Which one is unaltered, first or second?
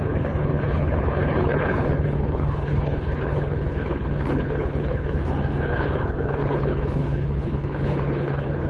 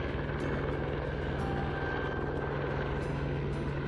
second